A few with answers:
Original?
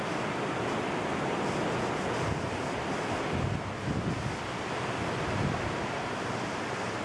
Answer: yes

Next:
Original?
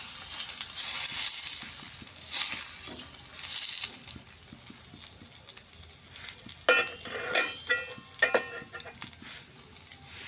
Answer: yes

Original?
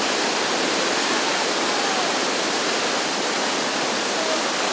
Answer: yes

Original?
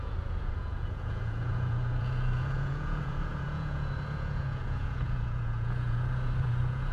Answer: no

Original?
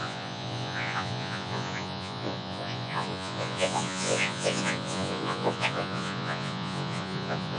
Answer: no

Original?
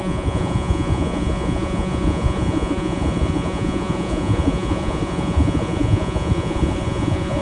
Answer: no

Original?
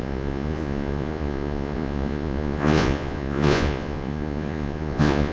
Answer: no